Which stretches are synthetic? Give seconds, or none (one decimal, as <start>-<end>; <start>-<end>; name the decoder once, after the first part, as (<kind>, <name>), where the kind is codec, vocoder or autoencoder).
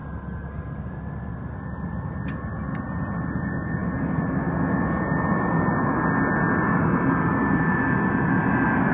none